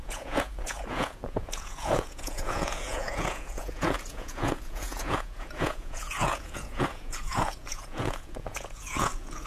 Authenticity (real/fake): fake